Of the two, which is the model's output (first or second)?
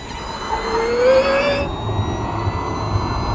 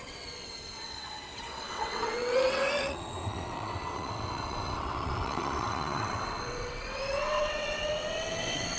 second